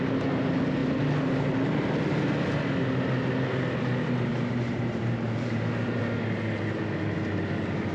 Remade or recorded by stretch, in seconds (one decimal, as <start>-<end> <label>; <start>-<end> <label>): 0.0-4.3 recorded; 4.3-6.0 remade; 6.0-7.9 recorded